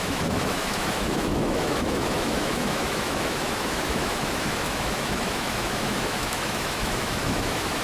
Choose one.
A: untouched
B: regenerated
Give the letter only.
B